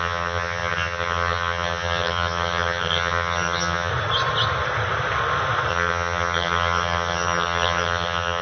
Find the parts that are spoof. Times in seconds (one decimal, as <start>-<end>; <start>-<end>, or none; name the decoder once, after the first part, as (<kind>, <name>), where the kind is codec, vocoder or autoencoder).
0.0-3.9 (vocoder, HiFi-GAN); 5.7-8.4

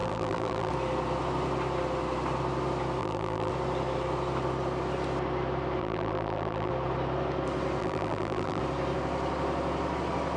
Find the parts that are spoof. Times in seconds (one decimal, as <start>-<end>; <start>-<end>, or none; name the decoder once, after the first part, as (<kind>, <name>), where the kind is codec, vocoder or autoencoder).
0.0-0.7 (vocoder, BigVGAN v2); 3.0-3.5; 5.8-6.7; 7.8-8.6

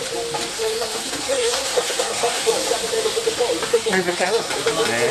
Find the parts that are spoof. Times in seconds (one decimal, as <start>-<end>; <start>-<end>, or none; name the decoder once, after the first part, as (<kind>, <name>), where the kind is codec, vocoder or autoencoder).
0.5-2.5 (codec, SNAC); 3.7-4.5